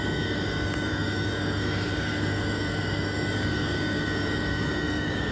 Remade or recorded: remade